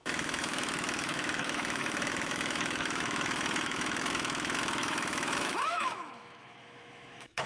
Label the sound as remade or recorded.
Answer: remade